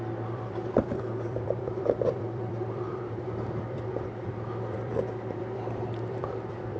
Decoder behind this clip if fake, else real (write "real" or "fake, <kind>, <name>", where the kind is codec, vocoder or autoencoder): fake, vocoder, BigVGAN v2